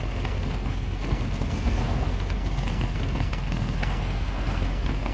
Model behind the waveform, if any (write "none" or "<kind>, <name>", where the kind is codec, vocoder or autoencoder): codec, SNAC